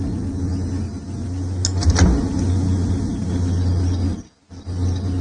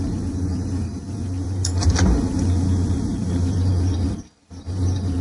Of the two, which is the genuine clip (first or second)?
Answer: first